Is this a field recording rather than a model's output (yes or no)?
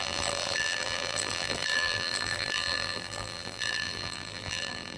no